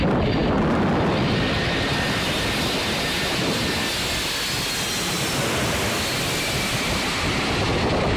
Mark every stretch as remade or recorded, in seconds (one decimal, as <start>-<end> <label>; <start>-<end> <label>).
0.0-8.2 recorded